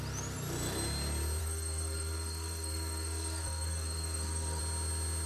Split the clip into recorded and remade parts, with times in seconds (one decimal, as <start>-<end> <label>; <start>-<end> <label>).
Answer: 0.0-1.4 recorded; 1.4-4.6 remade; 4.6-5.3 recorded

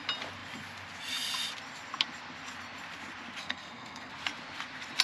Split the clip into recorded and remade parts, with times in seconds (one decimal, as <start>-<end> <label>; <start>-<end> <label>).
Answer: 0.0-3.4 recorded; 3.4-4.1 remade; 4.1-5.0 recorded

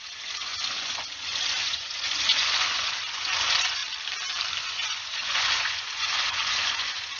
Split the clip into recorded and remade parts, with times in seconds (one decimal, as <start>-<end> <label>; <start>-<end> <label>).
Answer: 0.0-3.8 remade; 3.8-4.6 recorded; 4.6-7.2 remade

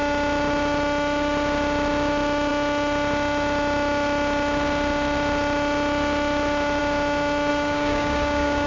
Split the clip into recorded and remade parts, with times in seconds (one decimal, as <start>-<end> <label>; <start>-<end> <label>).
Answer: 0.0-7.5 recorded; 7.5-8.7 remade

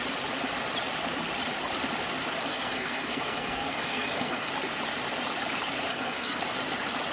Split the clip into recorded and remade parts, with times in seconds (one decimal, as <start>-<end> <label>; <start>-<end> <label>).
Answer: 0.0-2.5 recorded; 2.5-4.5 remade; 4.5-5.9 recorded; 5.9-6.4 remade; 6.4-7.1 recorded